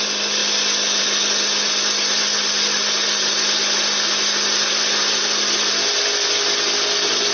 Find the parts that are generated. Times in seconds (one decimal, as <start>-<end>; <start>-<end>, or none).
none